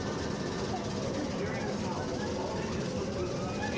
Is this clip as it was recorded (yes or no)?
yes